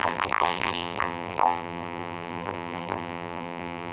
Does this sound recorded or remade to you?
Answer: remade